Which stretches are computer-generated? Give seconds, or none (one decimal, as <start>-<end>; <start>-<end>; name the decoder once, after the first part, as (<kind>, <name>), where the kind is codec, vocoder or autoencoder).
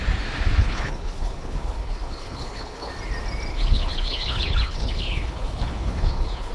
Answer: 0.6-2.9 (codec, HILCodec); 3.5-6.5